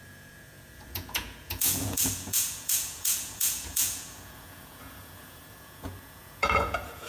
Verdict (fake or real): fake